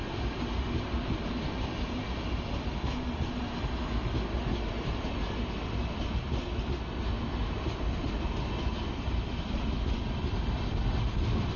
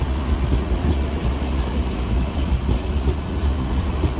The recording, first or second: first